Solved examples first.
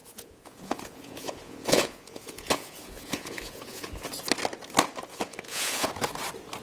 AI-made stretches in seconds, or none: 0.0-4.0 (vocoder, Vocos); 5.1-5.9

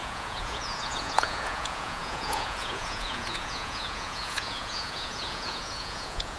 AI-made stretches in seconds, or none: 0.0-6.4 (vocoder, Vocos)